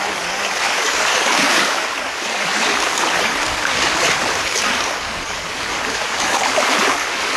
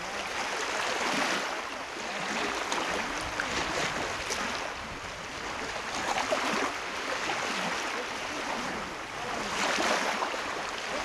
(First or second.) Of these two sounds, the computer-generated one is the first